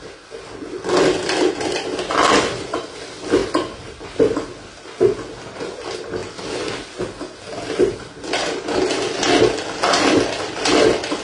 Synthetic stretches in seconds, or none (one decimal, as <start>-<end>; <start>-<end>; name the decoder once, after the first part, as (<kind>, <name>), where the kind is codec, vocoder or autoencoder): none

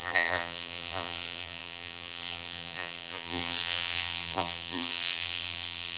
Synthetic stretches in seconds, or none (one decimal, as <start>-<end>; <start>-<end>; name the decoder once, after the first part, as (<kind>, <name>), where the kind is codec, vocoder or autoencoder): 0.0-6.0 (vocoder, BigVGAN v2)

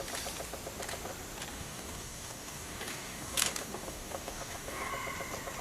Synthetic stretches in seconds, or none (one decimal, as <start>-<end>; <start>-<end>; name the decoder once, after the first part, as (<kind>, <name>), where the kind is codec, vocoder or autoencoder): 1.5-4.9 (codec, DAC)